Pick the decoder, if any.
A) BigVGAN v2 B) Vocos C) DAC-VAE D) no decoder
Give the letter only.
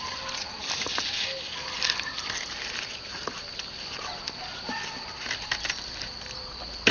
D